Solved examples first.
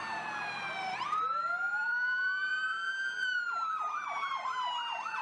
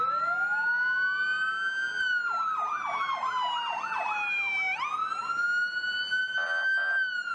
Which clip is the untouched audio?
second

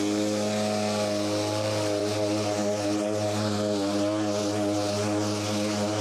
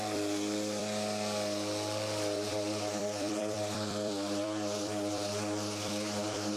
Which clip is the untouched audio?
first